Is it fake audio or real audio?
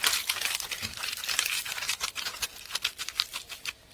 fake